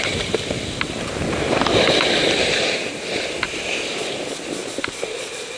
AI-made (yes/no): no